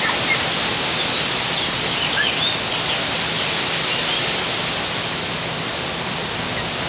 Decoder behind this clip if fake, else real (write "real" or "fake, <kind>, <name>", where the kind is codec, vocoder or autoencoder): real